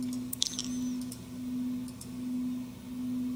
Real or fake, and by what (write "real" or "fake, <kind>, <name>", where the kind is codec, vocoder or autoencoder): real